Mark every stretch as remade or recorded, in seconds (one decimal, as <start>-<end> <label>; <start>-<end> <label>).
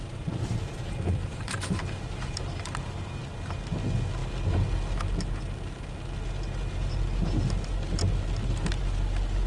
0.0-3.2 remade; 3.2-9.5 recorded